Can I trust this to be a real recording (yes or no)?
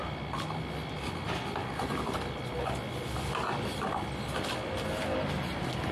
yes